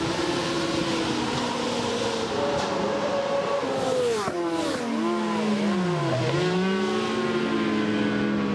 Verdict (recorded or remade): recorded